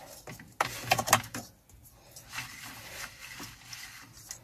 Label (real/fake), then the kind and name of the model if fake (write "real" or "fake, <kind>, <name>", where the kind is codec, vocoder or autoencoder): real